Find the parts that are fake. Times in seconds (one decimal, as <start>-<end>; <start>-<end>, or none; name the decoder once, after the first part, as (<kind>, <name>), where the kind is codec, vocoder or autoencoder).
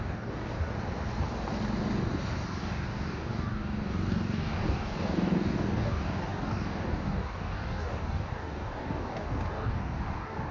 0.0-0.7 (codec, DAC); 2.6-10.5